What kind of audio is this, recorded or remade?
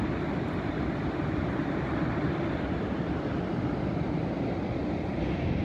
recorded